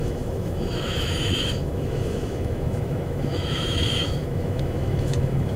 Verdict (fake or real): fake